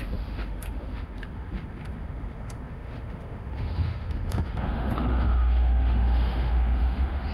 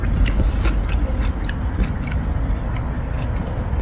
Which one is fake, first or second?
first